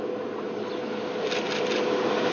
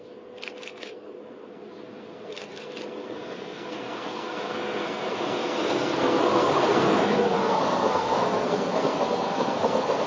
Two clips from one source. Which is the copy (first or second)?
second